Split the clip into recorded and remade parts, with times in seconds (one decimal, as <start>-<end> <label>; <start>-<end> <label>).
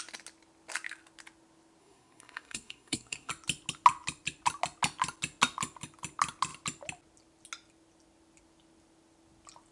0.0-1.8 recorded; 1.8-3.3 remade; 3.3-9.7 recorded